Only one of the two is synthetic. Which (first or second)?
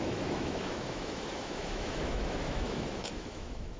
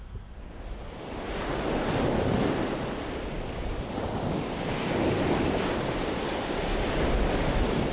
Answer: first